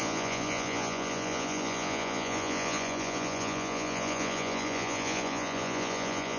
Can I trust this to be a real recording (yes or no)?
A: no